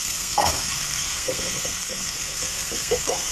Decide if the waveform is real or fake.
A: fake